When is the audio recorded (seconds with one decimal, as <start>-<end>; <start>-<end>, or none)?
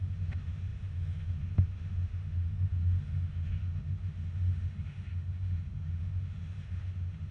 none